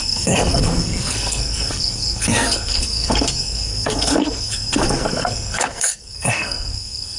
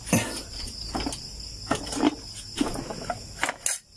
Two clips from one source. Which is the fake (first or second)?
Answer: first